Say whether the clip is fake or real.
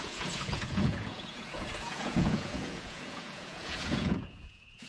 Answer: fake